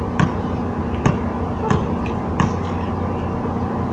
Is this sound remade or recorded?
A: recorded